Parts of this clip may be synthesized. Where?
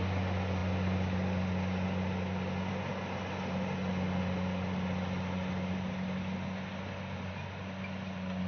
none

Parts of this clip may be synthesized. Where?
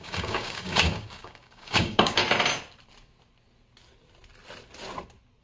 0.0-2.2 (codec, DAC)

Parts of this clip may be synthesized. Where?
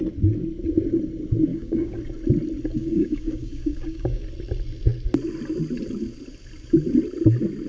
1.5-2.0 (codec, DAC); 2.8-4.2